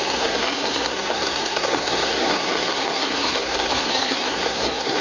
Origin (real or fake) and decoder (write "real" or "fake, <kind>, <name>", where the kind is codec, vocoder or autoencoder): fake, codec, SNAC